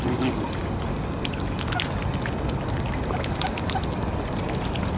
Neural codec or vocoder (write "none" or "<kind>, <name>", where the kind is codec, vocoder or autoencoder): none